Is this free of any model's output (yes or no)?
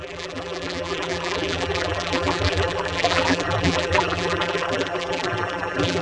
no